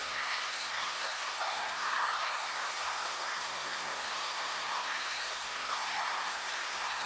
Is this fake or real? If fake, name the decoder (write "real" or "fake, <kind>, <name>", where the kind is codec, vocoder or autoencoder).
fake, codec, SNAC